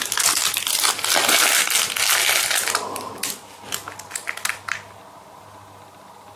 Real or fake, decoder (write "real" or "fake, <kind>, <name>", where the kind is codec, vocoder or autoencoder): real